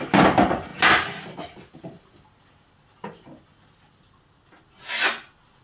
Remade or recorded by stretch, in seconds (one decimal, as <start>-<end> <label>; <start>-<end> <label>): 0.0-5.6 recorded